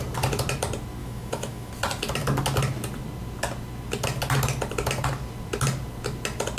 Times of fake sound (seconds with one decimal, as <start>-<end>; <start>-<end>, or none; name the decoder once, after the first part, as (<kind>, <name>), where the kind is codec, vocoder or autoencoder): 1.0-1.7 (autoencoder, DAC-VAE)